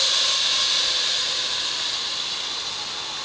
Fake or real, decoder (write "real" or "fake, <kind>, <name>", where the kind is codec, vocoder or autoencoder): real